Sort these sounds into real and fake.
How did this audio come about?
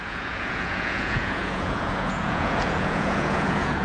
fake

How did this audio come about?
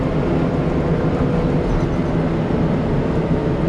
real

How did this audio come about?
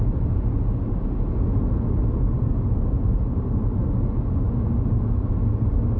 real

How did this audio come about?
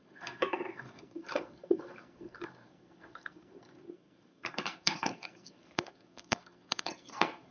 fake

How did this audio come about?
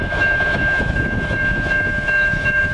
fake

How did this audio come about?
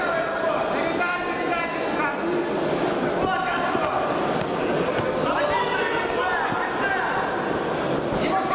real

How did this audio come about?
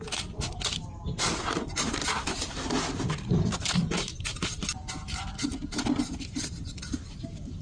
real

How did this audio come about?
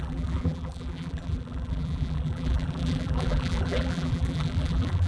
fake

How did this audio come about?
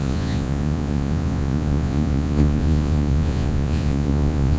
fake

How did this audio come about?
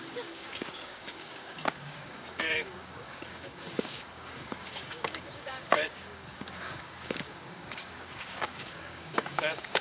fake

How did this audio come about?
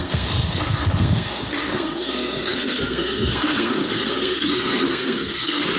fake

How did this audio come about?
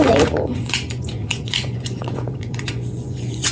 fake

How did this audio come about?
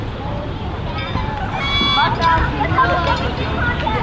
real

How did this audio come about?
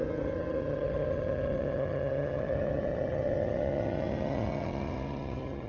fake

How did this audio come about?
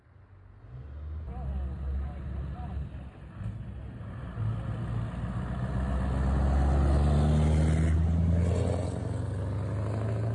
real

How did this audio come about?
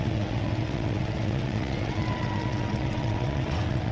fake